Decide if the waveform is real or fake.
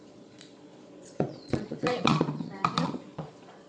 fake